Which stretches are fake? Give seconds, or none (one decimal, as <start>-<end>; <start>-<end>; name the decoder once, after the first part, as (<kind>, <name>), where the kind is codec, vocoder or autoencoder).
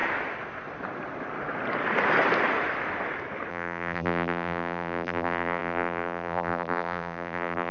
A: 3.5-7.7 (vocoder, BigVGAN v2)